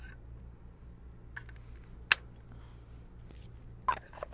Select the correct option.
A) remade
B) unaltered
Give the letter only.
B